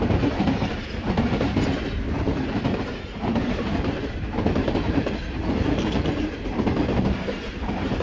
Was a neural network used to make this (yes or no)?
yes